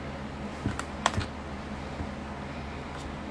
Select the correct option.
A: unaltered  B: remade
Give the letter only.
A